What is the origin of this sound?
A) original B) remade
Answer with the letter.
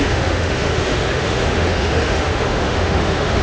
B